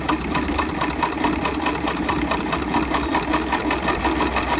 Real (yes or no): no